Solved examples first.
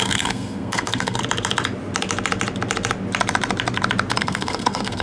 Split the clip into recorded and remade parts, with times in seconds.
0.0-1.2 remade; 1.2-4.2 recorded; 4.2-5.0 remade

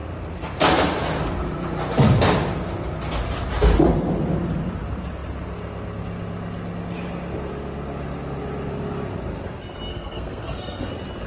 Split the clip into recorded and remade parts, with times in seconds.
0.0-9.9 recorded; 9.9-10.9 remade; 10.9-11.3 recorded